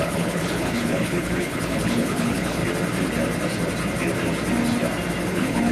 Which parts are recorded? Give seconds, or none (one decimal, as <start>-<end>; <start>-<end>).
2.6-5.3